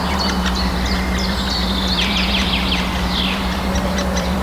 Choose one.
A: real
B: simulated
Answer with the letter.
A